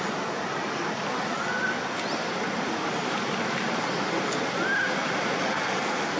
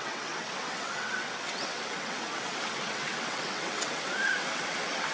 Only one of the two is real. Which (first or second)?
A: first